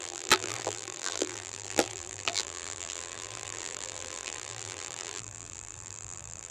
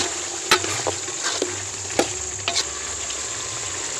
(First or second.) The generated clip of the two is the first